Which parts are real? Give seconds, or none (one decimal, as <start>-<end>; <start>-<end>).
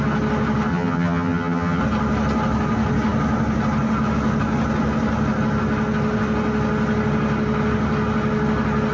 0.0-0.7; 1.8-8.9